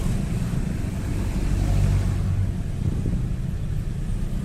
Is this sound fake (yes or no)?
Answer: no